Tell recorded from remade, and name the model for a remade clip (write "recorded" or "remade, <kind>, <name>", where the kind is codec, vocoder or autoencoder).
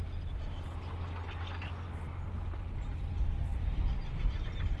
recorded